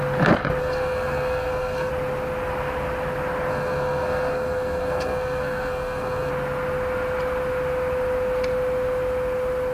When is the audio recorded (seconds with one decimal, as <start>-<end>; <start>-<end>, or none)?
0.0-0.6; 1.9-3.5; 6.3-9.7